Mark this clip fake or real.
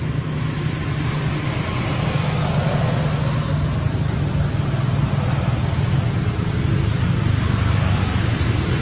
real